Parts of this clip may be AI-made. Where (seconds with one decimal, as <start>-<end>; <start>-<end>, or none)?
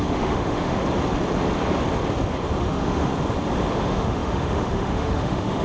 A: 0.0-0.8; 2.6-3.1; 3.7-5.6